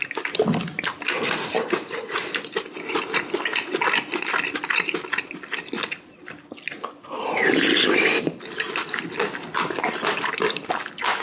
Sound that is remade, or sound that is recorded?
recorded